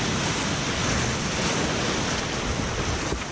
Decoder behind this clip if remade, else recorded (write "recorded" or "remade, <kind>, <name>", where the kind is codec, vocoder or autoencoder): recorded